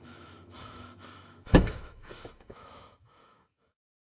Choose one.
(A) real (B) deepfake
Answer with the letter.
B